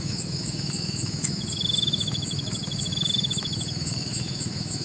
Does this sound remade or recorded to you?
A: remade